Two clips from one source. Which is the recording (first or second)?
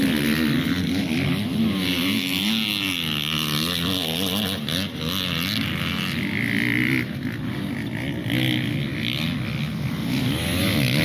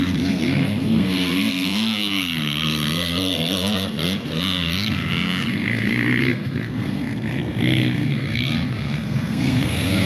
first